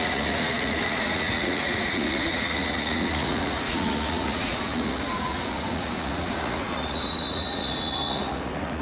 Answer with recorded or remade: remade